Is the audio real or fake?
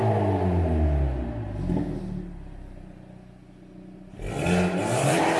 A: real